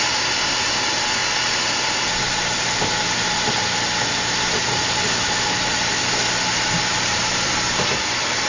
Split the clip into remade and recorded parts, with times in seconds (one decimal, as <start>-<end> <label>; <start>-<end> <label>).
0.0-8.5 recorded